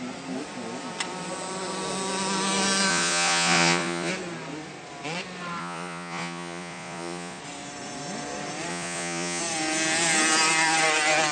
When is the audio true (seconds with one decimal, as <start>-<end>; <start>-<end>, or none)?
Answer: 0.0-2.9; 4.1-5.6; 7.4-8.7; 9.4-11.3